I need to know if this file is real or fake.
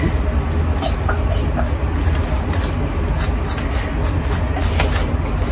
real